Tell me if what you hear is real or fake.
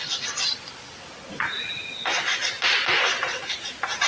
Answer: real